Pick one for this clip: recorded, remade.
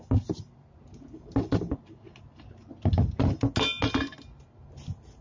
recorded